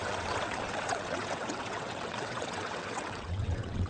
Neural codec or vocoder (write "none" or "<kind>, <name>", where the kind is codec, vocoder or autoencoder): vocoder, WaveNeXt